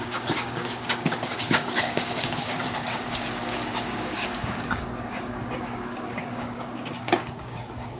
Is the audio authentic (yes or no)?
no